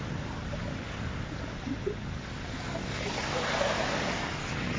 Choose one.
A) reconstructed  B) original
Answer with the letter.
B